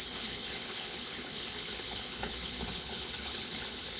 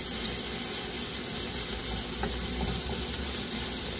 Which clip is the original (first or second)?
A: second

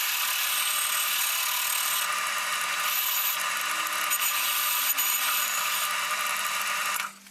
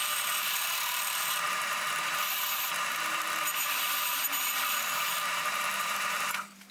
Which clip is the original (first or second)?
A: first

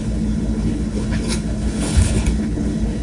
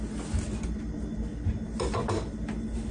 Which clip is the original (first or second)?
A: second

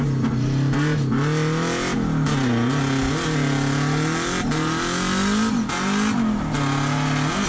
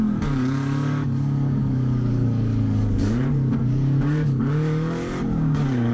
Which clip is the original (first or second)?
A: first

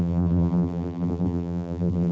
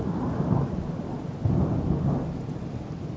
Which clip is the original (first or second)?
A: second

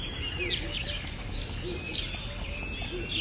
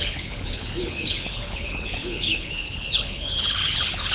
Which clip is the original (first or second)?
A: first